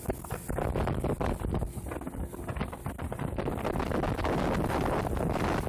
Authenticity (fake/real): real